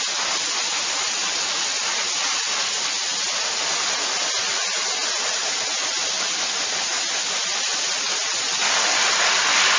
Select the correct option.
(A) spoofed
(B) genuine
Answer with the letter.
B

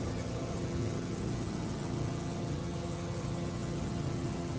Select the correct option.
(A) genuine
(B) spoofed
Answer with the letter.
B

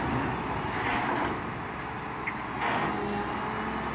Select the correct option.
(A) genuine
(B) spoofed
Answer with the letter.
A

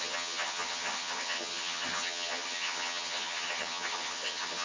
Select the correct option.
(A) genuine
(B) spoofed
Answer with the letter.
B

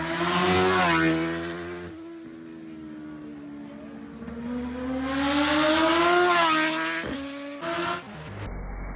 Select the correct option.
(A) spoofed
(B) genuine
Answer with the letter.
B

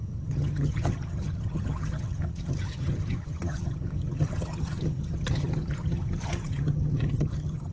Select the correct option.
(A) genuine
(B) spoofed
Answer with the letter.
B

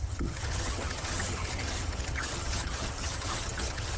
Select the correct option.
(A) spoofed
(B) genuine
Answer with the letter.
A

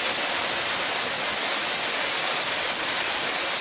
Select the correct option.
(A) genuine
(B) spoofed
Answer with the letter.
A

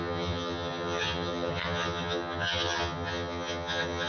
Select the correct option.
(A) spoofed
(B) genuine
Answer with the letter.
A